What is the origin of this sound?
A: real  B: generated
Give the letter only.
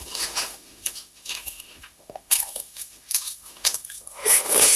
B